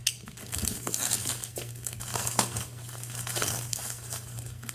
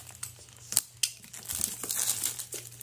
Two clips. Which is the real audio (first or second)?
second